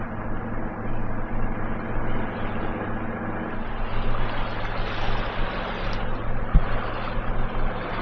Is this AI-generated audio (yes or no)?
no